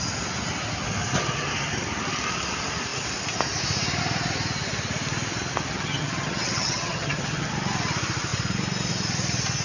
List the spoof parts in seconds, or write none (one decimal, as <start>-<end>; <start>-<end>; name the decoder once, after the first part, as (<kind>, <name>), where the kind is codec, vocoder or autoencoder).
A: 5.7-7.5 (vocoder, HiFi-GAN)